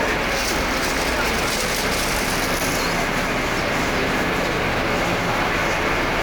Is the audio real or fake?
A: real